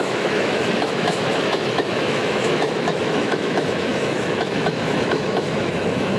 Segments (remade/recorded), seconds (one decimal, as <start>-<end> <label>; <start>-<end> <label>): 0.0-6.2 remade